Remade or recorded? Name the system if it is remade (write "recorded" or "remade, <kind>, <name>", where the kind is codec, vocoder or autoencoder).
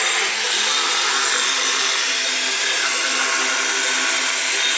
recorded